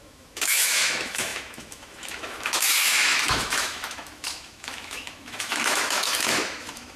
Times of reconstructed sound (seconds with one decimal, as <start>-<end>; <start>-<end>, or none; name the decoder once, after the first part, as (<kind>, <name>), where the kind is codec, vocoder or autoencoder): 0.0-7.0 (autoencoder, DAC-VAE)